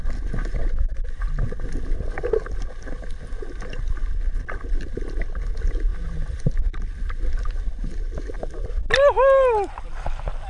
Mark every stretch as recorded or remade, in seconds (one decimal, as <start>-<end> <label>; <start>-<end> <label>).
0.0-0.6 recorded; 0.6-1.2 remade; 1.2-5.9 recorded; 5.9-6.6 remade; 6.6-10.5 recorded